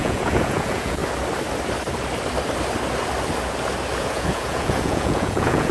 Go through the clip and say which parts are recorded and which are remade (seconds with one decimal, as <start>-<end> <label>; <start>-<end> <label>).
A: 0.0-1.0 remade; 1.0-4.0 recorded; 4.0-5.7 remade